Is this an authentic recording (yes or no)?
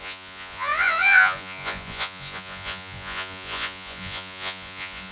no